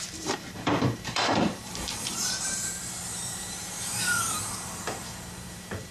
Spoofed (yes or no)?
yes